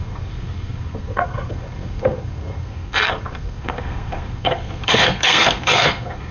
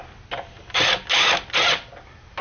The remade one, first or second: first